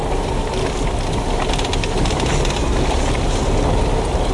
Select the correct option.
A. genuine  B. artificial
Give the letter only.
A